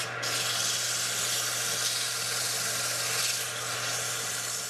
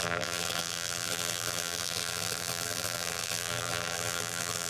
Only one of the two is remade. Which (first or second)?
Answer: second